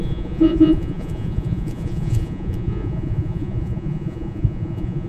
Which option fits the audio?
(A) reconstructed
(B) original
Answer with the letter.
A